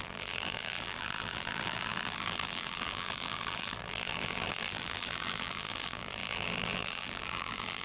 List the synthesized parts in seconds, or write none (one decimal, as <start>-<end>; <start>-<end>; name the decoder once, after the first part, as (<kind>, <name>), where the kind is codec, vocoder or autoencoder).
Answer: 0.0-7.8 (vocoder, BigVGAN v2)